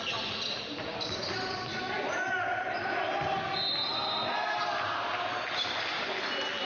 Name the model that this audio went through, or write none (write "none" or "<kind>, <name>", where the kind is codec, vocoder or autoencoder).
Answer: none